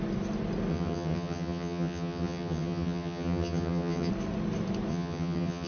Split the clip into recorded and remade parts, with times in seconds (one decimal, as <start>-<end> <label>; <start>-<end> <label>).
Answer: 0.0-0.7 recorded; 0.7-4.1 remade; 4.1-4.9 recorded; 4.9-5.7 remade